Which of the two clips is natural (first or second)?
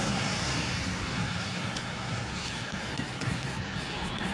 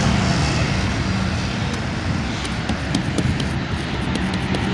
second